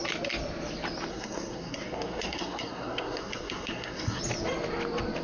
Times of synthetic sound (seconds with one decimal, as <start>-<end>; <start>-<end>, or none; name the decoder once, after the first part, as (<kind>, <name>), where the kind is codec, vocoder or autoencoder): 1.1-4.2 (codec, SNAC)